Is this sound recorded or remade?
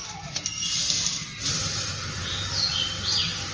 recorded